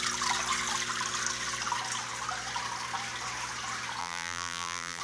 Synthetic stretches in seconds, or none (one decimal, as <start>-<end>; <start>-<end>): 4.0-5.0